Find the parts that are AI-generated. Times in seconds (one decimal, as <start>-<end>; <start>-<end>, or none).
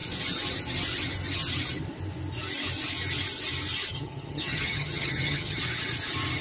3.9-5.6